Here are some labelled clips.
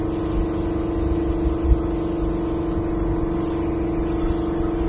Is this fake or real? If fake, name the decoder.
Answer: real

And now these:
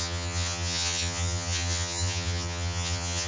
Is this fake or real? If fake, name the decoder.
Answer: fake, vocoder, HiFi-GAN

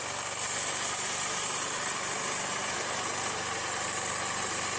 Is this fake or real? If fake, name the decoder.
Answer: real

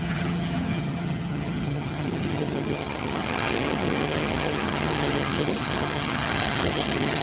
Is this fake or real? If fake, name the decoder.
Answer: fake, vocoder, HiFi-GAN